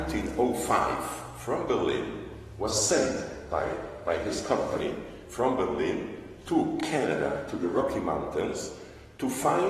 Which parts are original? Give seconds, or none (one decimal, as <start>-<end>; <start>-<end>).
0.0-2.7; 4.8-6.8; 7.8-9.7